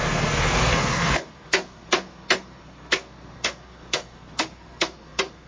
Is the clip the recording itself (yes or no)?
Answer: no